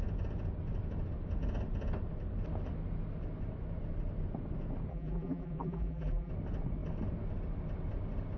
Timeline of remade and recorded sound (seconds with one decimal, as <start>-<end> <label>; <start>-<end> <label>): 0.0-4.9 recorded; 4.9-6.3 remade; 6.3-8.4 recorded